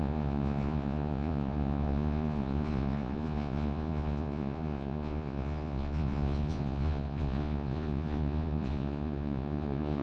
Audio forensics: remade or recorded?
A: remade